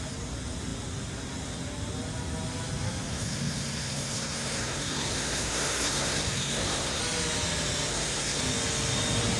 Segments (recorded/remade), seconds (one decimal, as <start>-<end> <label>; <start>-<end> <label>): 0.0-3.1 recorded; 3.1-7.0 remade; 7.0-7.9 recorded; 7.9-8.4 remade; 8.4-9.4 recorded